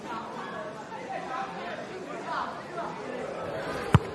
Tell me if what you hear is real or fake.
real